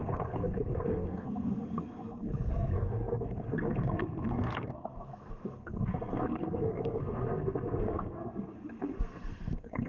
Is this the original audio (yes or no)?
no